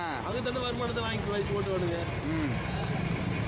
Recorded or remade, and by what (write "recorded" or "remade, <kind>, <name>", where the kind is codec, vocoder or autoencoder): recorded